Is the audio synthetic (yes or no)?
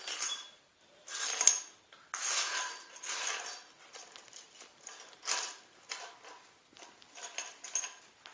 no